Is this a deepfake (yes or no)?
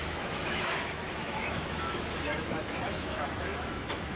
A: yes